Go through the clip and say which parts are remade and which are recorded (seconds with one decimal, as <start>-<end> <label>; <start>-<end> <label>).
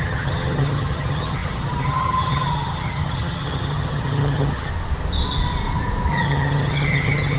0.0-4.7 remade; 4.7-6.1 recorded; 6.1-7.4 remade